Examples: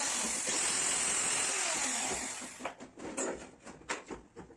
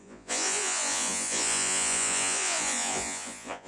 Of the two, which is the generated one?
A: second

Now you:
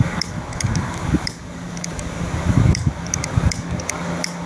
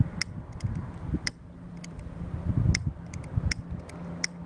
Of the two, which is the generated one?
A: first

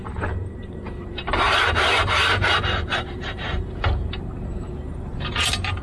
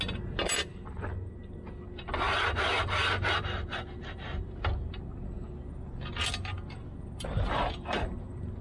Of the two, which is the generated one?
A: first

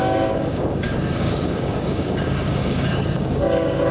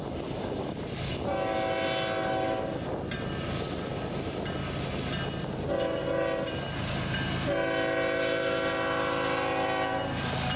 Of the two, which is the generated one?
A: first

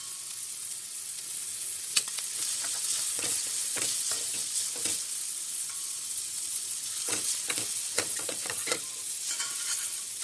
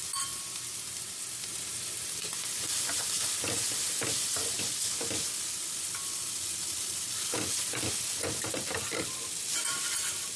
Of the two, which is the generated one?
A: first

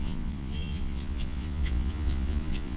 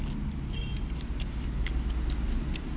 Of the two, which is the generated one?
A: first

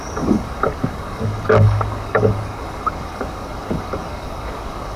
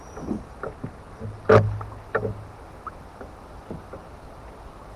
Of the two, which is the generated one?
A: first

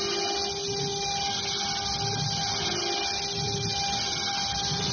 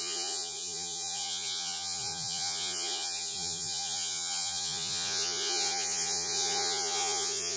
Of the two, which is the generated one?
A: second